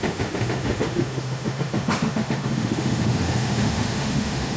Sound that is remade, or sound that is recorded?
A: remade